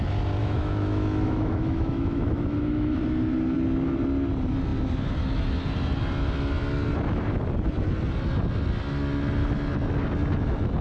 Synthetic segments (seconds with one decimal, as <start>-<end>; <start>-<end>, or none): 0.4-3.0